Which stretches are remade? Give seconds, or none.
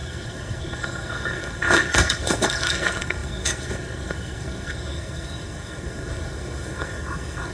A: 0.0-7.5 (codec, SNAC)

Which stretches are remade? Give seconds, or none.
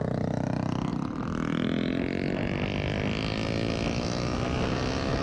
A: none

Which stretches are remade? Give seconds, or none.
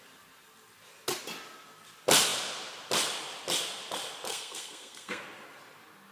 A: 4.3-5.2 (codec, SNAC)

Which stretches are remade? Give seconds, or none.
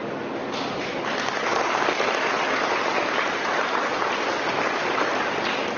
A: none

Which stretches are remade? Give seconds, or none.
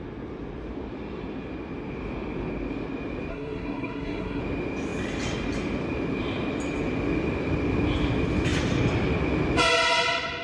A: 3.3-4.4 (codec, SNAC)